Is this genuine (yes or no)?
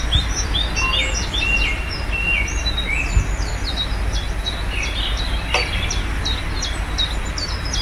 yes